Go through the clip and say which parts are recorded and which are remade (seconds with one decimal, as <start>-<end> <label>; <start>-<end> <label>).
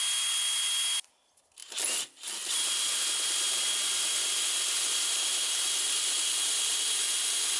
0.0-7.6 recorded